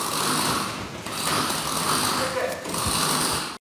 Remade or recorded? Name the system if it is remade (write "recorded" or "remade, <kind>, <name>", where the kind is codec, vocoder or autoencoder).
recorded